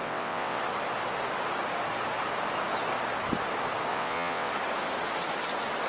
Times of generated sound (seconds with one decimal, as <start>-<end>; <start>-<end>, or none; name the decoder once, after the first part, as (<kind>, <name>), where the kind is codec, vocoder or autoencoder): 0.0-0.6 (vocoder, WaveNeXt); 3.9-4.5